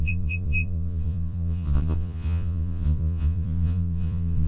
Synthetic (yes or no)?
yes